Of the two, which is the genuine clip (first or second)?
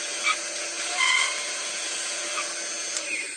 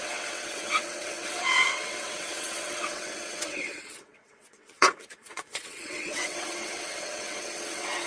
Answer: first